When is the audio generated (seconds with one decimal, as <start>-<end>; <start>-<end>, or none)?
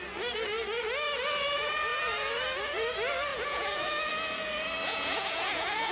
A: 3.3-4.1; 4.9-5.9